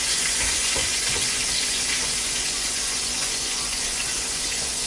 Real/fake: fake